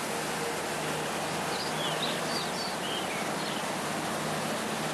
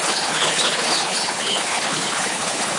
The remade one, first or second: second